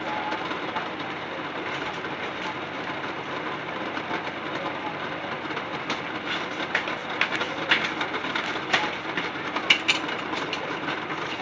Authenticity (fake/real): real